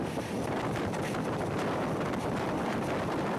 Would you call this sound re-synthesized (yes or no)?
yes